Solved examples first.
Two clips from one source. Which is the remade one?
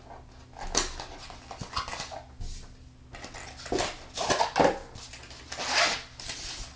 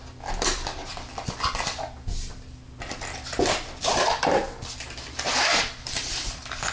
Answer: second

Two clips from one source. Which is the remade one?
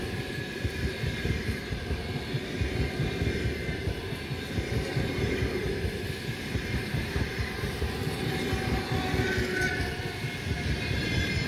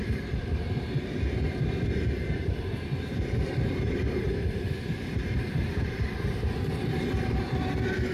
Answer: second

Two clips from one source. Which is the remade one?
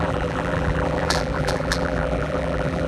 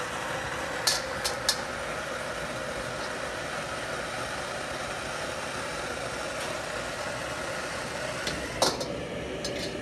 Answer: first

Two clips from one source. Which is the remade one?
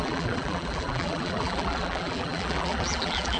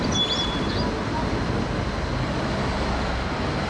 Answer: first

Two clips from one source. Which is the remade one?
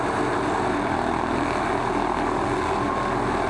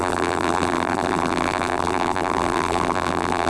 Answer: second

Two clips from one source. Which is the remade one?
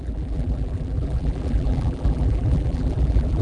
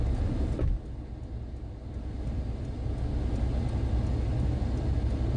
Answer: first